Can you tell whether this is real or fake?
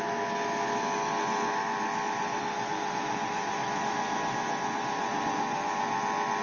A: real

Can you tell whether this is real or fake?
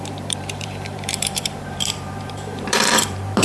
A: fake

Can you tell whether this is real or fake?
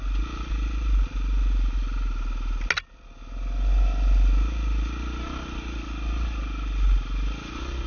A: real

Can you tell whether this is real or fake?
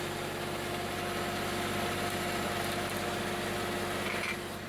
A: real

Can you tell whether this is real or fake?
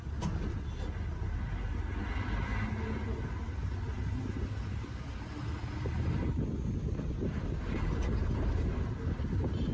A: real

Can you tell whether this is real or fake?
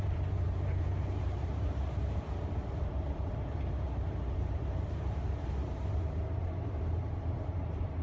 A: fake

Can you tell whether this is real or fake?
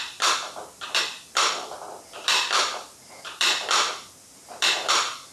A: fake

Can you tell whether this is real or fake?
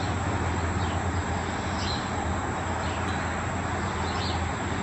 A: real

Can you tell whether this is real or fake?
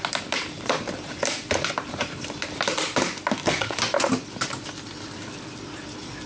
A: fake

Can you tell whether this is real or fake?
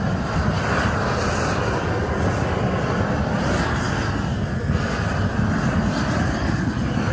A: real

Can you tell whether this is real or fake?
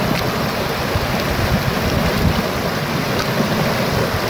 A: real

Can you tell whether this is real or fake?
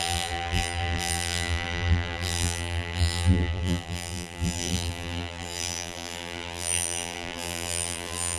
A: fake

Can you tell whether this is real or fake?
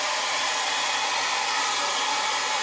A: real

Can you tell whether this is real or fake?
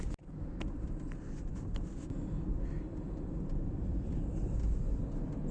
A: real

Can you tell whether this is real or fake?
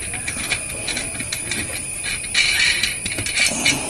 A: real